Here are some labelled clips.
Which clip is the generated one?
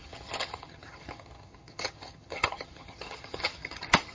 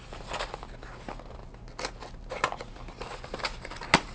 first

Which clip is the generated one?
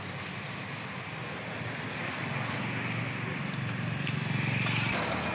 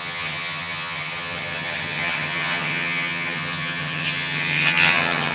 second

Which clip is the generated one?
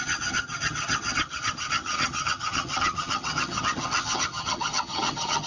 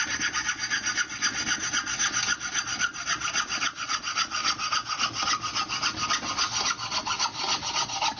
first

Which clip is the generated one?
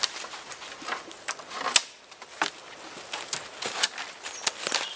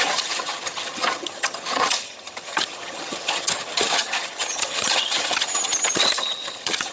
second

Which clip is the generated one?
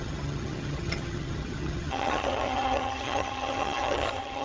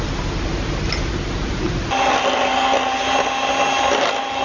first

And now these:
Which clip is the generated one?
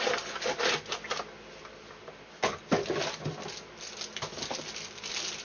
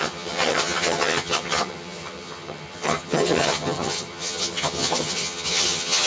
second